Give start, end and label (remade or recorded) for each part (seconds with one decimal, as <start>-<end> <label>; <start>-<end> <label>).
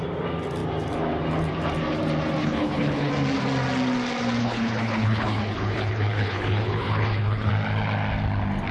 0.0-2.4 recorded; 2.4-3.1 remade; 3.1-4.4 recorded; 4.4-7.5 remade; 7.5-8.7 recorded